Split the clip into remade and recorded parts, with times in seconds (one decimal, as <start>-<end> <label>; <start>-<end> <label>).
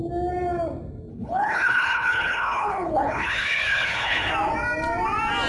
0.0-1.1 recorded; 1.1-4.3 remade; 4.3-5.5 recorded